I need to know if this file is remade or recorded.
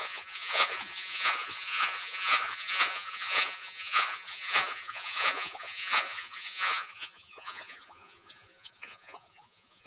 remade